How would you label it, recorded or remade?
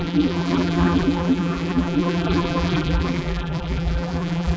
remade